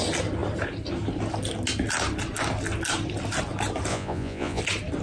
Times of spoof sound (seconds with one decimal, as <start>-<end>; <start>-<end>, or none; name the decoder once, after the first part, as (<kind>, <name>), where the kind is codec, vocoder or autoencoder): 3.9-4.6 (vocoder, Vocos)